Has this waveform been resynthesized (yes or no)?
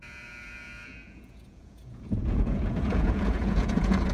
yes